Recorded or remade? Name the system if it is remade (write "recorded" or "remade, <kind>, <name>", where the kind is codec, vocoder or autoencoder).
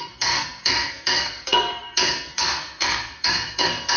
remade, codec, SNAC